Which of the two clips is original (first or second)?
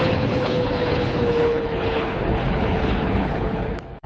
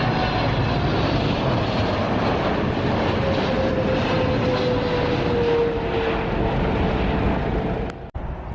second